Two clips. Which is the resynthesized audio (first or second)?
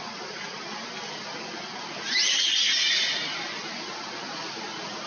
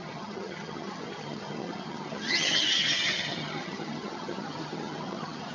second